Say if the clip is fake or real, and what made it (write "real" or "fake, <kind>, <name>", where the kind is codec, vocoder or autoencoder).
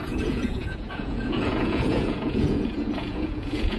fake, vocoder, Vocos